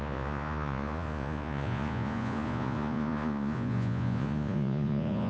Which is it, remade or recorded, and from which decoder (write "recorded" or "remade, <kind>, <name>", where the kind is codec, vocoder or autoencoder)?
remade, vocoder, Vocos